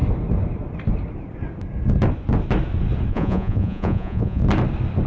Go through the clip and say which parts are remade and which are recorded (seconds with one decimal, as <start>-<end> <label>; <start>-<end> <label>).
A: 0.0-3.1 recorded; 3.1-4.4 remade; 4.4-5.1 recorded